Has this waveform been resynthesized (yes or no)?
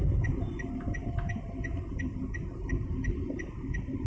yes